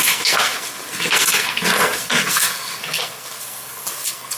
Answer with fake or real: fake